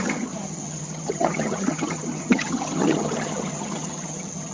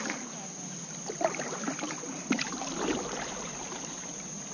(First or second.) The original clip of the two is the second